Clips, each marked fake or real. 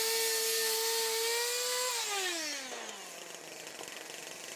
real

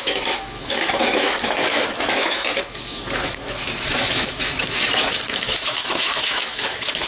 fake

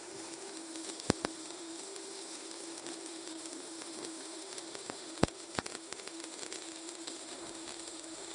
fake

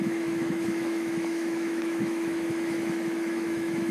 fake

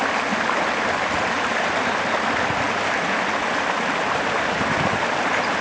real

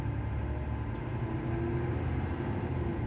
real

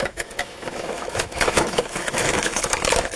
fake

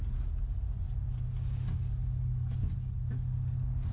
real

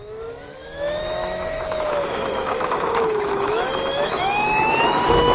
fake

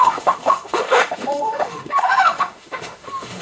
fake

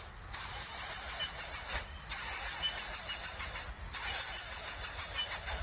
real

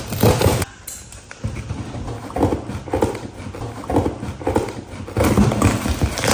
real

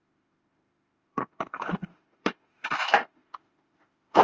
fake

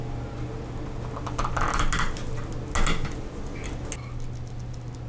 real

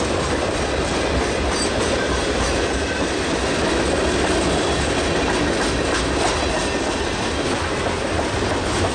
real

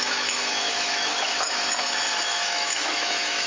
fake